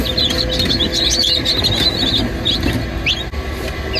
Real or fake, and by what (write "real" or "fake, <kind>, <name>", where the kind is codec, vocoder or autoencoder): real